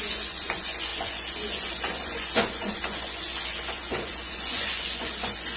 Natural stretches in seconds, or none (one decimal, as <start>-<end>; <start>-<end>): none